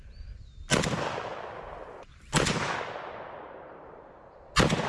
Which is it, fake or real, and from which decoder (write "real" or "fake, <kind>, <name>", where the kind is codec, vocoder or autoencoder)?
real